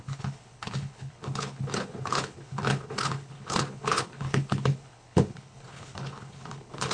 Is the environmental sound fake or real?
fake